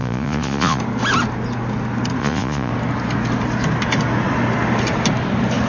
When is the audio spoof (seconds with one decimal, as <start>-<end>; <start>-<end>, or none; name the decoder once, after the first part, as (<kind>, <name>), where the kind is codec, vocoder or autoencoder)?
0.0-0.8 (vocoder, Vocos); 2.2-2.7